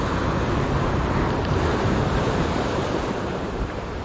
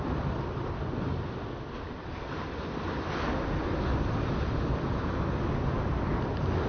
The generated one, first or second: first